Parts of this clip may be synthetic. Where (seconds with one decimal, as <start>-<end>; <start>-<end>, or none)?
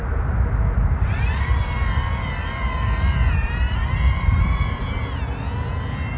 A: 2.0-4.8